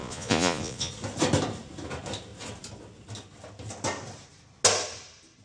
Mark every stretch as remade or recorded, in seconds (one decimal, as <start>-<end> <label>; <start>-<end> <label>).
0.0-0.9 remade; 0.9-5.4 recorded